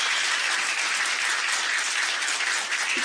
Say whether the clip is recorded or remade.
recorded